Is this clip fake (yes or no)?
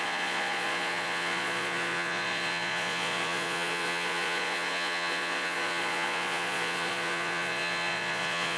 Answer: yes